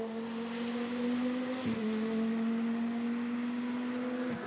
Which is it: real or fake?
real